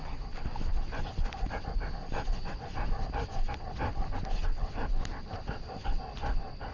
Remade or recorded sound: recorded